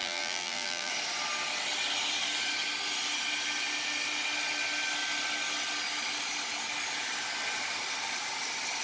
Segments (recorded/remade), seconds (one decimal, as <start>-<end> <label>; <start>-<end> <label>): 0.0-0.9 remade; 0.9-8.8 recorded